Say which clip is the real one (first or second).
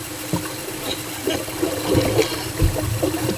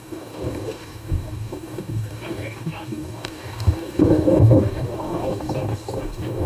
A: first